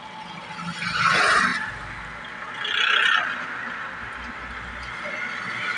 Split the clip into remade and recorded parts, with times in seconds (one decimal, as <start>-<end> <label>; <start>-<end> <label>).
0.0-5.8 recorded